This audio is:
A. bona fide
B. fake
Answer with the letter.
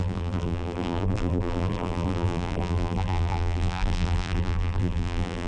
B